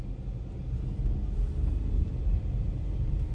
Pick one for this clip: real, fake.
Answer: real